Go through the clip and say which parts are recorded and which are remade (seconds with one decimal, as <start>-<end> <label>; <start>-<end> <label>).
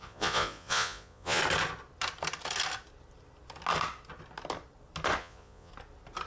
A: 0.0-1.4 remade; 1.4-5.2 recorded; 5.2-5.7 remade; 5.7-6.3 recorded